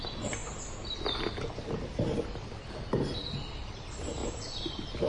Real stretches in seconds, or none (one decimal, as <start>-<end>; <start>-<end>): 0.0-5.1